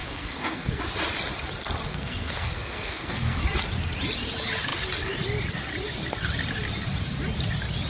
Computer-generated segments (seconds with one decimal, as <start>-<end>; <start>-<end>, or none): 0.0-0.8; 1.9-3.4